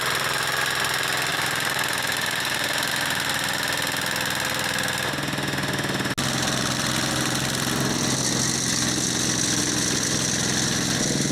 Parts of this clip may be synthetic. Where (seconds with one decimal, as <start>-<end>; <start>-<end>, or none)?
1.3-2.9